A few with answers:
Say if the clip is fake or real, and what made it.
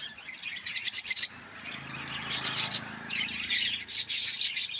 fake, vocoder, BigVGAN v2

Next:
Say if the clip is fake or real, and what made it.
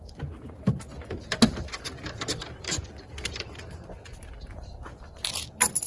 real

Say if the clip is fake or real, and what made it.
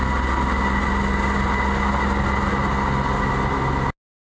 real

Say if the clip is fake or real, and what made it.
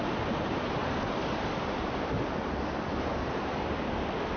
real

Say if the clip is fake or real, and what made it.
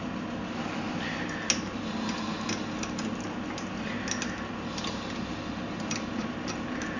real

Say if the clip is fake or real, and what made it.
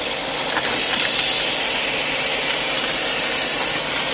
real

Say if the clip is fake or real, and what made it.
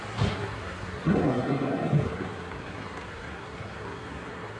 fake, codec, SNAC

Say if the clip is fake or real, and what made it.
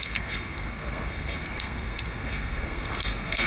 fake, codec, SNAC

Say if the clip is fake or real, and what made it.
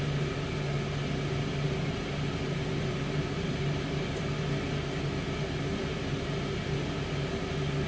real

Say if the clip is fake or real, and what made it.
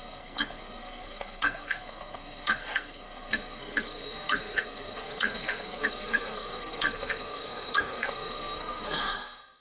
fake, codec, SNAC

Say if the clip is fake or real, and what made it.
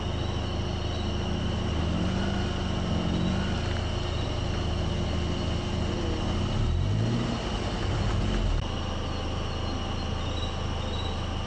real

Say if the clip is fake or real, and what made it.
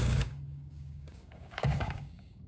fake, codec, DAC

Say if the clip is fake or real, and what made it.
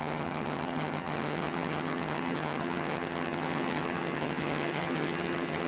fake, vocoder, HiFi-GAN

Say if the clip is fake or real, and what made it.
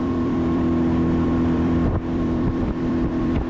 fake, vocoder, BigVGAN v2